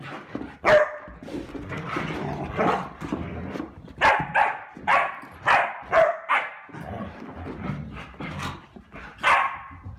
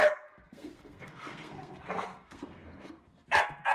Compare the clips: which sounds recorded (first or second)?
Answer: first